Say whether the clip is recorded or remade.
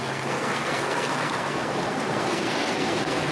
remade